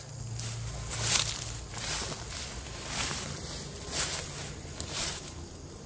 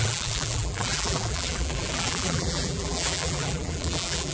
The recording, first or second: first